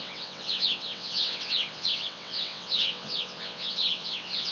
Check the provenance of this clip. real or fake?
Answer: fake